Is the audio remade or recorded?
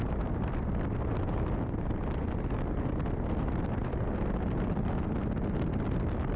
recorded